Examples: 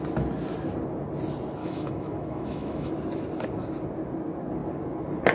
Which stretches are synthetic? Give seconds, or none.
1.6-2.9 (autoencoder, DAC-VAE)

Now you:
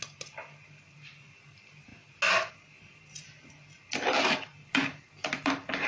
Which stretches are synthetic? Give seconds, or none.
none

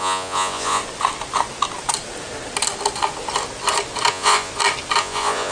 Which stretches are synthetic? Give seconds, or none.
0.0-0.8 (vocoder, Vocos); 4.1-4.5; 5.0-5.5

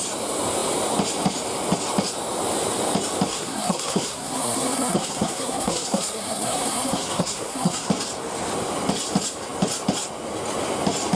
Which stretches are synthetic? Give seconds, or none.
3.3-7.9 (codec, SNAC)

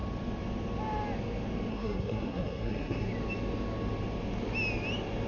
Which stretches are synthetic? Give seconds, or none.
1.7-3.1 (codec, SNAC)

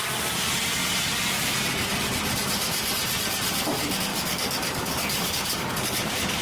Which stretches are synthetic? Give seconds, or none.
4.1-6.4 (codec, DAC)

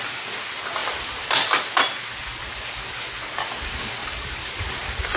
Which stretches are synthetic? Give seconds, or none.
none